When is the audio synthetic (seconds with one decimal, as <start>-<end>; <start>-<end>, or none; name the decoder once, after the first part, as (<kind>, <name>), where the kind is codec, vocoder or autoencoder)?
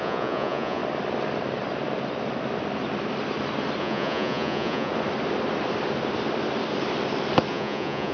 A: 0.0-0.8 (vocoder, Vocos); 3.8-4.9; 7.5-8.1